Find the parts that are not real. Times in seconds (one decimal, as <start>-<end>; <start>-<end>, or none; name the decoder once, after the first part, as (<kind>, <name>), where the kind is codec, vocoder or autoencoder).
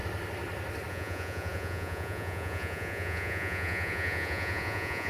0.9-5.1 (vocoder, Vocos)